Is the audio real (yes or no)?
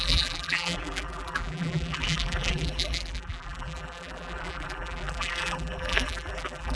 no